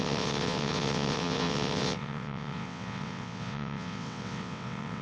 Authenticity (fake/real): fake